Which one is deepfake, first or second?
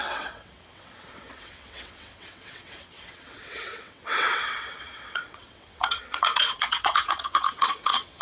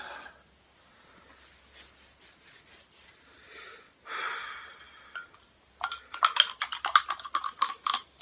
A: first